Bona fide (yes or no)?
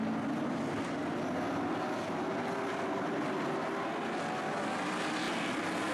yes